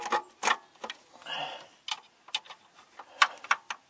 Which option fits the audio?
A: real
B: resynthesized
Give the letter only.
A